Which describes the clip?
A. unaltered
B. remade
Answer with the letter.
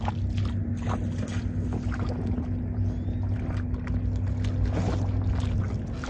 A